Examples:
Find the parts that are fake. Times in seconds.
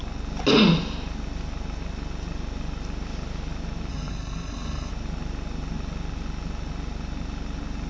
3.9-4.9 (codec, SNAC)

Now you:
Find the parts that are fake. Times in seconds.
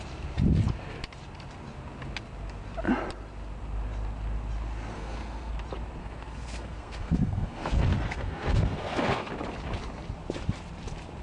4.9-5.5 (codec, SNAC); 6.0-9.3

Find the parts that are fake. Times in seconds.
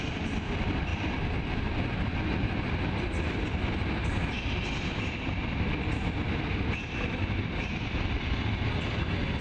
none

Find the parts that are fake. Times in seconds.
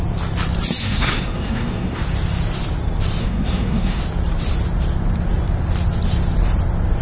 0.8-2.0 (codec, SNAC); 3.2-4.0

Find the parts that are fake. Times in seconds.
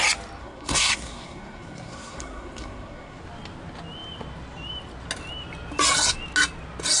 0.4-3.2 (codec, SNAC)